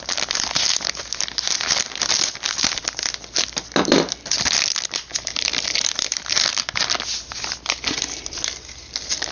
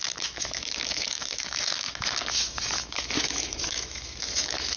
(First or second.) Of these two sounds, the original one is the first